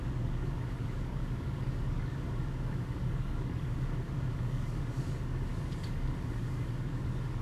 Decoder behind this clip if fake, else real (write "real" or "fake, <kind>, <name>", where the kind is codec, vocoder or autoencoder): fake, codec, DAC